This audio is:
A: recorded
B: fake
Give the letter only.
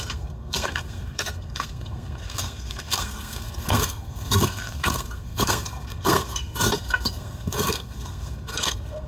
B